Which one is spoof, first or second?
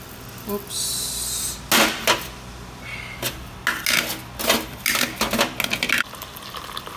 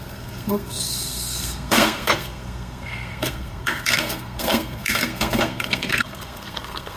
second